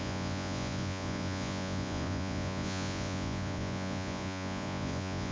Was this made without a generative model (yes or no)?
no